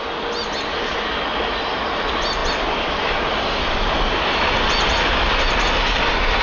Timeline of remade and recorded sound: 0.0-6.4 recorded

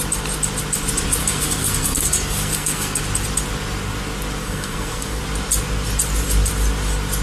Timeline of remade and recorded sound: 0.0-1.2 recorded; 1.2-3.0 remade; 3.0-4.4 recorded; 4.4-5.2 remade; 5.2-7.2 recorded

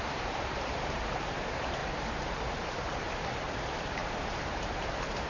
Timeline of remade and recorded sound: 0.0-5.3 remade

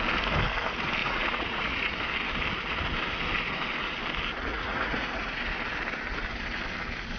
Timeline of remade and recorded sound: 0.0-1.0 recorded; 1.0-2.0 remade; 2.0-4.5 recorded; 4.5-5.4 remade; 5.4-7.2 recorded

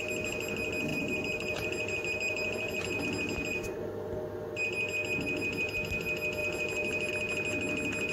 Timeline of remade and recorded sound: 0.0-0.9 recorded; 0.9-3.0 remade; 3.0-3.5 recorded; 3.5-4.1 remade; 4.1-6.4 recorded; 6.4-7.1 remade; 7.1-8.1 recorded